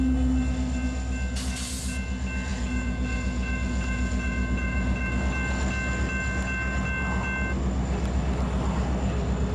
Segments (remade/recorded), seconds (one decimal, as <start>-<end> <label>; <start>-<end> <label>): 0.0-2.5 recorded; 2.5-5.2 remade; 5.2-9.5 recorded